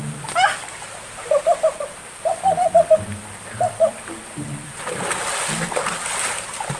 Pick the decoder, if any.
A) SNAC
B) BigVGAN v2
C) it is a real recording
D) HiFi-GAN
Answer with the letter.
B